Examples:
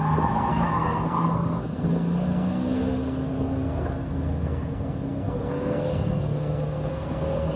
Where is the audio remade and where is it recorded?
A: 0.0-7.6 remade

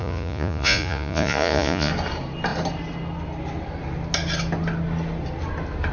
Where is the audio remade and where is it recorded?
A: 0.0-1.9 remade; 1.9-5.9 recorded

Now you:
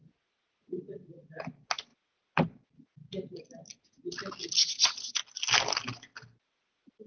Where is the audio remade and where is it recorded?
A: 0.0-0.6 recorded; 0.6-1.5 remade; 1.5-4.6 recorded; 4.6-5.2 remade; 5.2-7.1 recorded

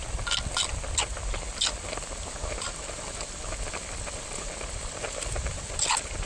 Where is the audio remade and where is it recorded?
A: 0.0-6.3 recorded